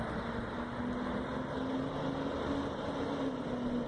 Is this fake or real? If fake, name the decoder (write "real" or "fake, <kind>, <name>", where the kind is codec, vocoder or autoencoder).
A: real